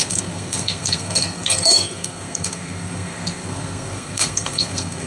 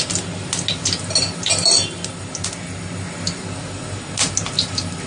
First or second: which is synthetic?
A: first